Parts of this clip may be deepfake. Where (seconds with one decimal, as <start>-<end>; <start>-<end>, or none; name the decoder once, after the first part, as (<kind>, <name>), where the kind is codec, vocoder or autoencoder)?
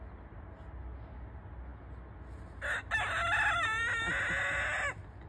none